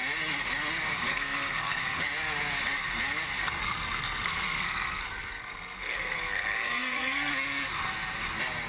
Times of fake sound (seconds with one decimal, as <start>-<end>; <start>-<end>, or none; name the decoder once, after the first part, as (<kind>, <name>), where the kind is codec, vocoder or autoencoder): 1.1-1.8 (codec, SNAC); 3.4-7.3